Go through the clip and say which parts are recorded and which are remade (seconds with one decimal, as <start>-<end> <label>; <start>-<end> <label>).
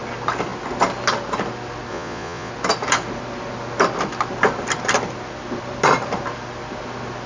0.0-1.9 recorded; 1.9-2.5 remade; 2.5-7.3 recorded